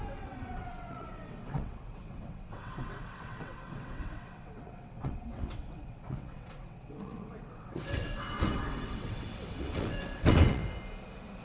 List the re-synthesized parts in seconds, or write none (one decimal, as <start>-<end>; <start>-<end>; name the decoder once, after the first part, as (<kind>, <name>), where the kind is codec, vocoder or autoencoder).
0.0-10.6 (vocoder, WaveNeXt)